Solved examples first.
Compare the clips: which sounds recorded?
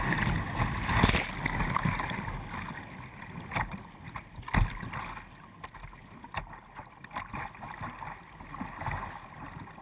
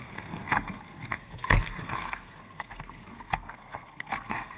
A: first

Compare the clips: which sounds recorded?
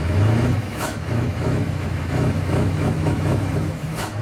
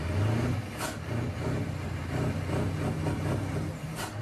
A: second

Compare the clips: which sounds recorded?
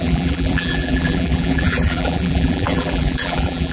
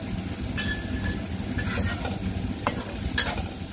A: second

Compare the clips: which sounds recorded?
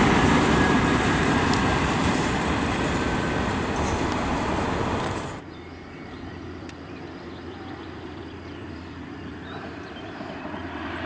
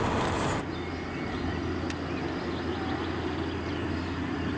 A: second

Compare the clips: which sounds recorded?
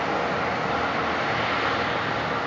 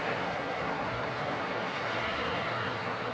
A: first